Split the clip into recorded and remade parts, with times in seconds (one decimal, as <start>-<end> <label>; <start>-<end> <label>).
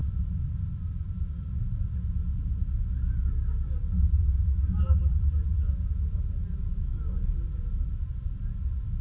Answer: 0.0-9.0 recorded